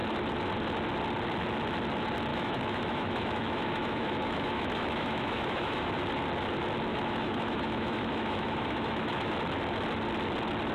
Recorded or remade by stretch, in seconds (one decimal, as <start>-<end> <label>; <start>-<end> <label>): 0.0-2.3 recorded; 2.3-5.9 remade; 5.9-6.9 recorded; 6.9-9.3 remade; 9.3-10.7 recorded